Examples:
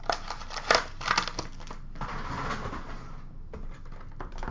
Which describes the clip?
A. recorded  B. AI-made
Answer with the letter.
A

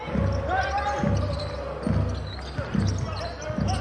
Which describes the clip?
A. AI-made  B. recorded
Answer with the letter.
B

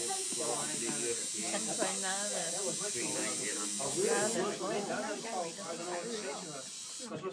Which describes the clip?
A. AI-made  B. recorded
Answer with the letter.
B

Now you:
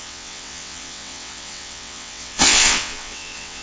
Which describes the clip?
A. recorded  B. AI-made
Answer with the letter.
B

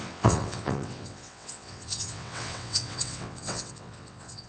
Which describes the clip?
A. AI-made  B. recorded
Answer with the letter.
A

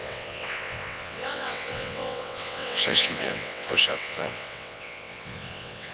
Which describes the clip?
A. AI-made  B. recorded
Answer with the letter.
A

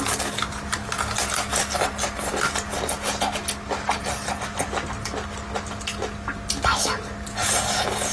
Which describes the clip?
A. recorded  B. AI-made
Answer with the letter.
A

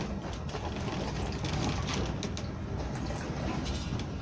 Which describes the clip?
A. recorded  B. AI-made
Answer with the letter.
A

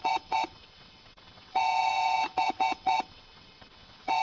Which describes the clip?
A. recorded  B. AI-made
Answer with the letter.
B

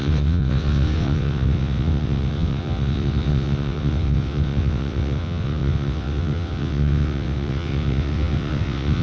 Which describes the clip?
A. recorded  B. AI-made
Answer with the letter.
B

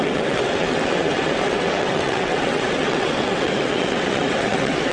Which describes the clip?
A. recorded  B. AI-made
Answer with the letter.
B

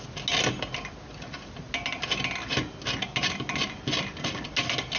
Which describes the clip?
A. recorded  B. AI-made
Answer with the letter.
A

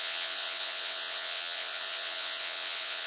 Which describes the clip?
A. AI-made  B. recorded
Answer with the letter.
A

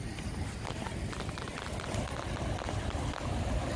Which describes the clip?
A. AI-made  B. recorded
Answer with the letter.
B